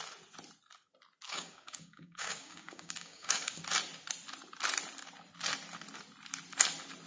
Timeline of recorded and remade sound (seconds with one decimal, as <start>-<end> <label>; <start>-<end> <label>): 0.0-1.3 recorded; 1.3-3.6 remade; 3.6-7.1 recorded